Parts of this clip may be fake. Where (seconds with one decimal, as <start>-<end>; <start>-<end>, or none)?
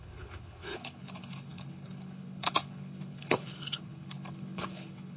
0.0-5.2